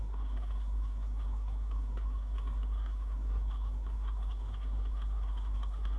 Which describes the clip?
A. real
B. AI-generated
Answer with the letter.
B